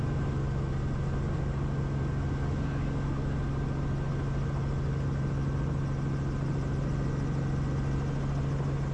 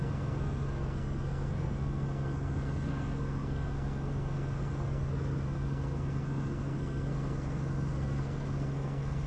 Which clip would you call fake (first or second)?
second